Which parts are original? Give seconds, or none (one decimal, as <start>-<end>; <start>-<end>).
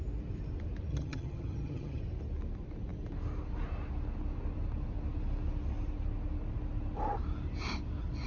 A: 0.0-0.9; 2.0-8.3